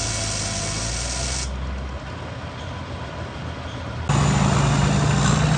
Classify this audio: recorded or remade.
recorded